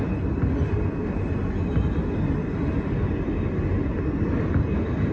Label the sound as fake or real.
real